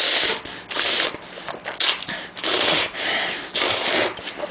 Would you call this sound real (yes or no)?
yes